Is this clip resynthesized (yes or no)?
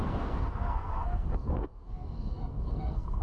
yes